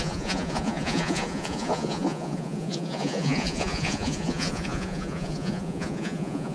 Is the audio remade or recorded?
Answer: remade